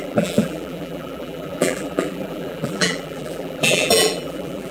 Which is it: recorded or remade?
remade